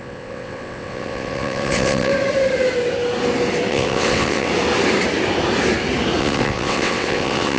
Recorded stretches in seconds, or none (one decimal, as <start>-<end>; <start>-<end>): 2.1-3.7; 4.5-6.2